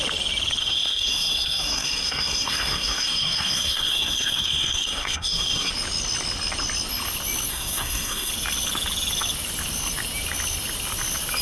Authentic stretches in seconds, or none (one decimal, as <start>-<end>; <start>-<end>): 0.0-0.6; 5.7-7.5; 8.3-11.4